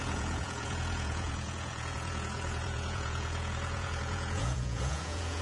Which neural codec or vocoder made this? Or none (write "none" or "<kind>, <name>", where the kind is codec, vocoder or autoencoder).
vocoder, Vocos